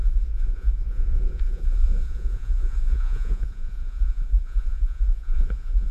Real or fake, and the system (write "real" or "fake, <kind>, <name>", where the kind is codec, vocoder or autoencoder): fake, vocoder, Vocos